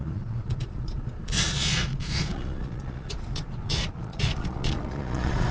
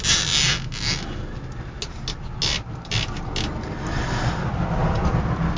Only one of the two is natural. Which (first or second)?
second